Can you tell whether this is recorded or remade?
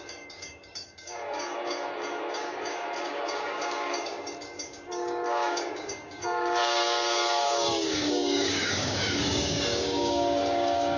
remade